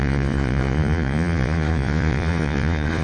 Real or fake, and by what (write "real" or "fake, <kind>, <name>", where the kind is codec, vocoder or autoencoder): fake, vocoder, Vocos